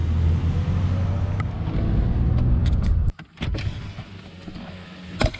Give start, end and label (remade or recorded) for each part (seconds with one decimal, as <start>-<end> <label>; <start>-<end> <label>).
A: 0.0-5.4 recorded